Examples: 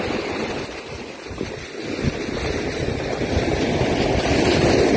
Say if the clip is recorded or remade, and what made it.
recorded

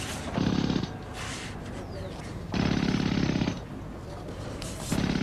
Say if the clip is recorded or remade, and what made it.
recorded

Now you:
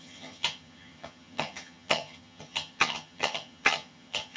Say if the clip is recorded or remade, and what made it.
remade, vocoder, HiFi-GAN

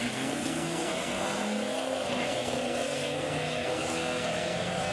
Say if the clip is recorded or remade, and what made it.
remade, codec, SNAC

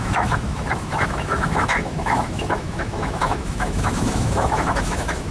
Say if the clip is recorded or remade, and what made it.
remade, autoencoder, DAC-VAE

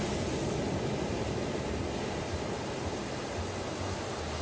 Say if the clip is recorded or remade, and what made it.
recorded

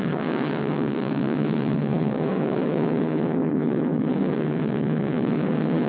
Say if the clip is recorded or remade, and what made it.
remade, vocoder, WaveNeXt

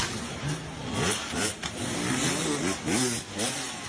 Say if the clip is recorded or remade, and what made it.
recorded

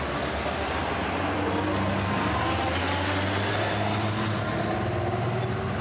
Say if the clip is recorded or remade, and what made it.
recorded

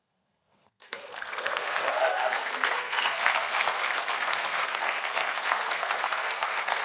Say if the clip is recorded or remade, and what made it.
remade, codec, SNAC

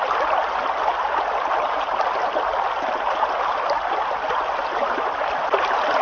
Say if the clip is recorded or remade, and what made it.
recorded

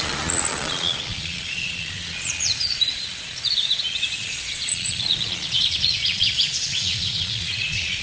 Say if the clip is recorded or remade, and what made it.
remade, vocoder, Vocos